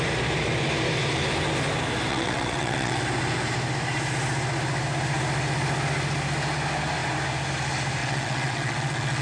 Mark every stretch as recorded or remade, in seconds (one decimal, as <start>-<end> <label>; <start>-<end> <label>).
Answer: 0.0-2.1 recorded; 2.1-3.0 remade; 3.0-8.0 recorded; 8.0-9.2 remade